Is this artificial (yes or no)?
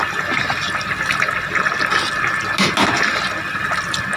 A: no